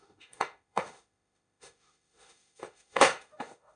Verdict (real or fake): fake